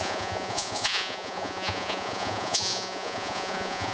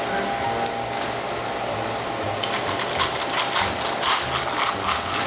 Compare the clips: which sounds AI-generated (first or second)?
first